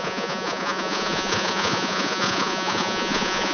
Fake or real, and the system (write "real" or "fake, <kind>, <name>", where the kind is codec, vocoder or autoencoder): fake, vocoder, Vocos